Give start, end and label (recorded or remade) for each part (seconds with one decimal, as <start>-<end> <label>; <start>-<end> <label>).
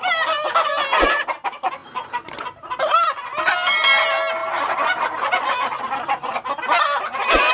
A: 0.0-7.5 recorded